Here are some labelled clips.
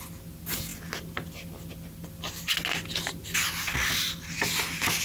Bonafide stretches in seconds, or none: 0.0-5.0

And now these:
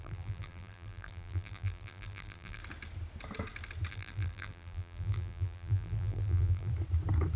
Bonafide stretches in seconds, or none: 2.6-3.9; 6.7-7.4